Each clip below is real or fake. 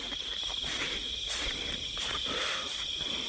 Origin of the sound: fake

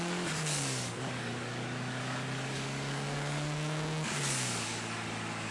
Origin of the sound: fake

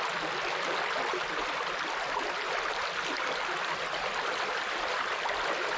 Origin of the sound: real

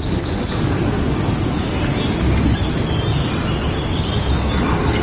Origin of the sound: real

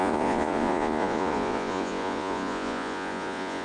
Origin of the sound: fake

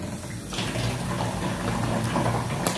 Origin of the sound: real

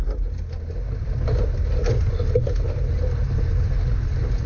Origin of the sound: real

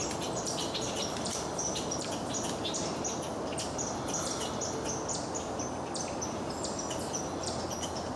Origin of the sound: real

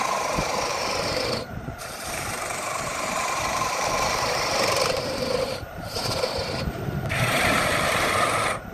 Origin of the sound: fake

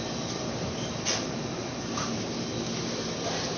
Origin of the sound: fake